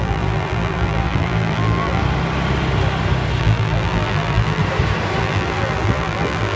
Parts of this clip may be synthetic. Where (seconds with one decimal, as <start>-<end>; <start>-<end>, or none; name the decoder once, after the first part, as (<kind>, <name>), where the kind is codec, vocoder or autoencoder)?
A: 0.0-2.0 (vocoder, BigVGAN v2); 3.4-4.6; 5.2-6.6